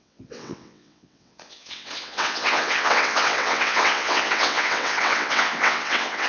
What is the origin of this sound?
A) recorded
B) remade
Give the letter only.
B